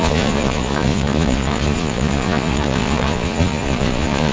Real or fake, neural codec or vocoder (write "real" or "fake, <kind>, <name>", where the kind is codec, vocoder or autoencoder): fake, vocoder, Vocos